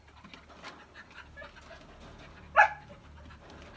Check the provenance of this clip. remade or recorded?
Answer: recorded